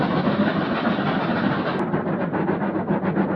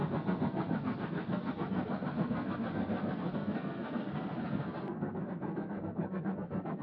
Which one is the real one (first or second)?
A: first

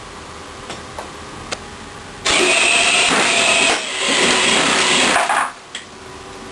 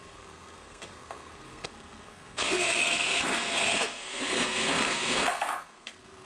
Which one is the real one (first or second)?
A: first